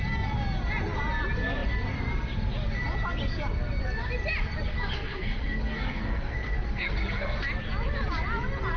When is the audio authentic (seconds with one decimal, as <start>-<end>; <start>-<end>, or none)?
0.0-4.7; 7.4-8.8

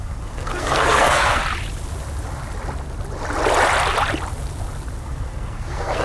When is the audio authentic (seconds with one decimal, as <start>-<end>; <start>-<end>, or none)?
1.4-5.0

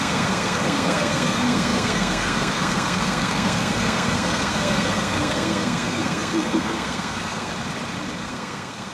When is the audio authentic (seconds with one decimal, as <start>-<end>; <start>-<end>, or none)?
7.5-8.2

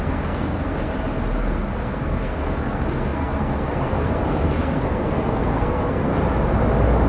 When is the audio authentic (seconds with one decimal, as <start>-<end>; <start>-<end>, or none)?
0.9-1.4; 6.1-7.1

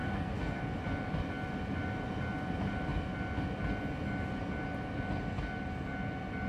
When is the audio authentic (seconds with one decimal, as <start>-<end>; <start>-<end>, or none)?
0.6-6.5

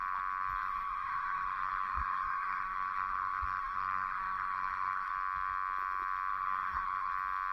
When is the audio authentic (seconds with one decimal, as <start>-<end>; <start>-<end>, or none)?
0.0-0.6; 5.1-6.3; 7.1-7.5

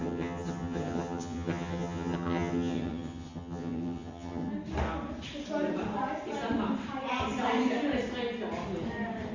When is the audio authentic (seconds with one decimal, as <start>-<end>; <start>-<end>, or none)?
4.5-9.3

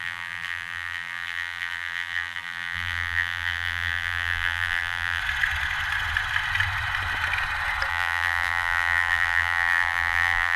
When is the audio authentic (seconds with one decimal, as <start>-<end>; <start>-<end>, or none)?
5.2-7.9